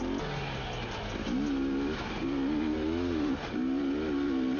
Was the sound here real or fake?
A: real